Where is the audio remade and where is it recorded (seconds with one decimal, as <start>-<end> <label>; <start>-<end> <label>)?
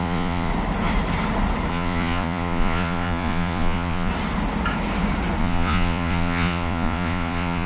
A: 0.0-0.5 remade; 0.5-1.7 recorded; 1.7-4.1 remade; 4.1-5.4 recorded; 5.4-7.7 remade